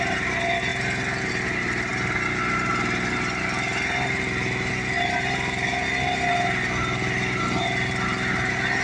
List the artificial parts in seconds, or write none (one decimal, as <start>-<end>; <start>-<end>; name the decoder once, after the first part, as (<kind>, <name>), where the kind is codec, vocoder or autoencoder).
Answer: none